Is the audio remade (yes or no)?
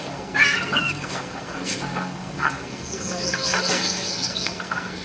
yes